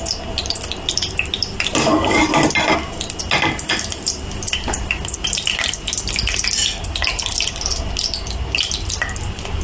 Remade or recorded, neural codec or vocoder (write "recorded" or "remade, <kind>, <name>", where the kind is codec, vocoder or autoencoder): recorded